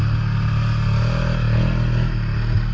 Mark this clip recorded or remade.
recorded